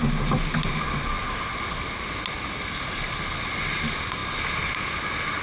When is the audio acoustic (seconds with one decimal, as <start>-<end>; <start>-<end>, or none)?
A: 0.0-5.4